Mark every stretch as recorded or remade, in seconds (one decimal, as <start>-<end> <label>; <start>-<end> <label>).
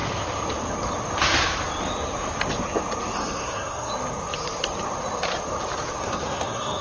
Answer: 0.0-3.2 recorded; 3.2-3.9 remade; 3.9-6.0 recorded; 6.0-6.8 remade